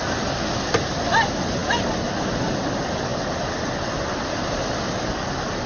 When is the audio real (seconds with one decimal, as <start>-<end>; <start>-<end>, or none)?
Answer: 0.0-5.7